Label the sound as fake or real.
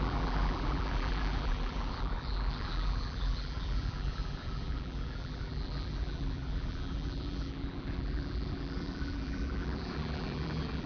fake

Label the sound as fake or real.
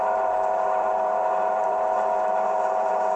fake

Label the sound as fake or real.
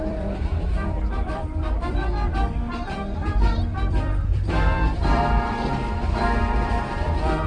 fake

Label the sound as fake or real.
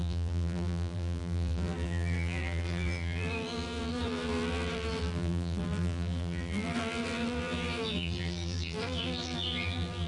fake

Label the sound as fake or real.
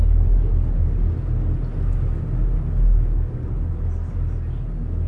real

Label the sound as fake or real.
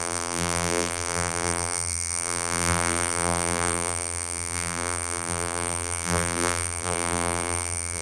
fake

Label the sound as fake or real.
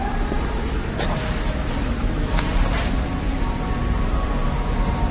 fake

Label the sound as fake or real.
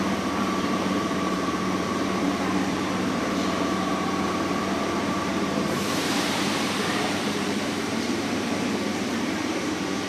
fake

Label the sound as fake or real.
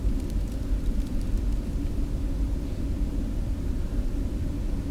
fake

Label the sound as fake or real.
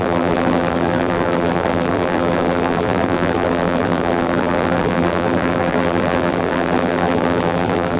fake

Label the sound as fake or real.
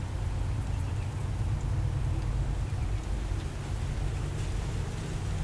real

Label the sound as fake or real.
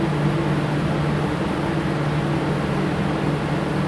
real